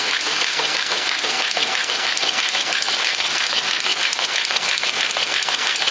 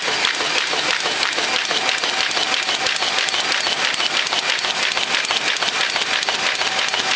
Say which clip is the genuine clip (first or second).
second